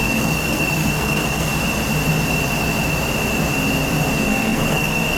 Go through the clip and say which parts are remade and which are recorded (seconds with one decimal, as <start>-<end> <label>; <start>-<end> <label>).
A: 0.0-1.5 remade; 1.5-4.1 recorded; 4.1-5.2 remade